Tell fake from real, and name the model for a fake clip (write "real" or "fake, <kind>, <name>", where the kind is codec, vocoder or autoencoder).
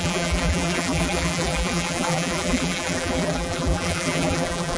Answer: fake, vocoder, BigVGAN v2